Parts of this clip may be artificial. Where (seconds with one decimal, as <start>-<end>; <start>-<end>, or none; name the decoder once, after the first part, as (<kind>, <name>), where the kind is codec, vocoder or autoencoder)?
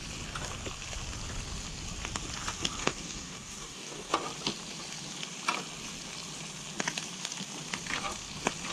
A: 2.8-4.1 (codec, DAC)